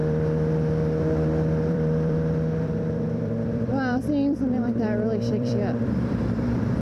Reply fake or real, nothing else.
fake